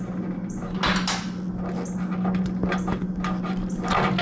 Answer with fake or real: real